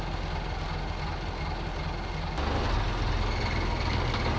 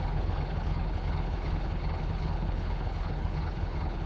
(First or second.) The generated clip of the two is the second